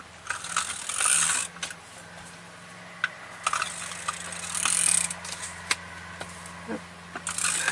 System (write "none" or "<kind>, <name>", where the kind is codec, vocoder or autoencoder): none